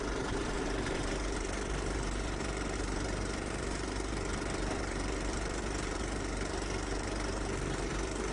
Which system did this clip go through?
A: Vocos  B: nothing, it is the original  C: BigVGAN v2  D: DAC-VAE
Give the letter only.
C